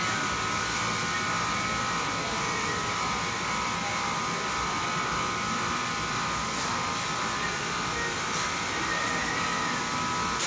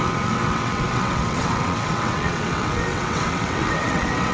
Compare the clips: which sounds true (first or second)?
first